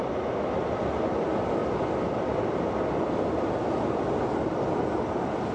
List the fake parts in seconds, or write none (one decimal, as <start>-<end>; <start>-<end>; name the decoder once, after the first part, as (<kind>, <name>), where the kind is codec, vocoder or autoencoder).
none